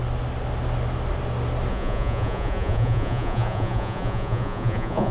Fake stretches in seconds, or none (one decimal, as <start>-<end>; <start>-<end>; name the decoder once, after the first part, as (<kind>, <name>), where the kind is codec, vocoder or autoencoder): 1.7-5.1 (vocoder, Vocos)